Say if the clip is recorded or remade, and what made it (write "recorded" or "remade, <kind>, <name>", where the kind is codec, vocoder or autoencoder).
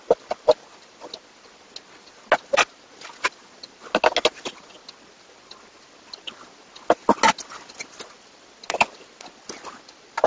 recorded